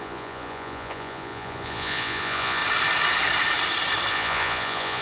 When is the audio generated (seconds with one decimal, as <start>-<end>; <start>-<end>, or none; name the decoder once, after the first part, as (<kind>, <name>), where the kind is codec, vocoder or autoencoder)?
0.0-2.6 (vocoder, Vocos); 4.1-5.0